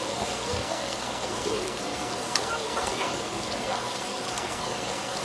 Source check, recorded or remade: remade